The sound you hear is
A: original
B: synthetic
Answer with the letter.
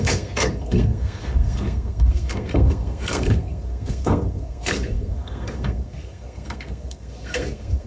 B